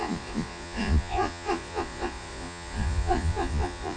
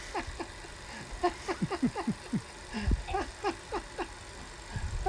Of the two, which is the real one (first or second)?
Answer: second